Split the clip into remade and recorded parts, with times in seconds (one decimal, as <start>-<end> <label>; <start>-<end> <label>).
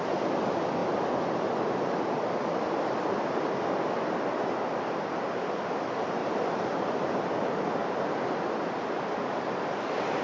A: 0.0-6.2 recorded; 6.2-7.1 remade; 7.1-10.2 recorded